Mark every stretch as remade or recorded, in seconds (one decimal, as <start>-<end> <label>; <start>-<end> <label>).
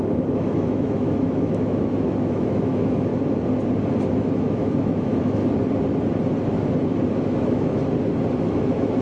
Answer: 0.0-3.1 remade; 3.1-4.1 recorded; 4.1-5.4 remade; 5.4-7.2 recorded; 7.2-7.8 remade; 7.8-8.4 recorded; 8.4-9.0 remade